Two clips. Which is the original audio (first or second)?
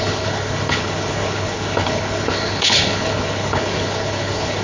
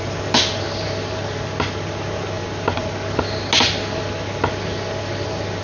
second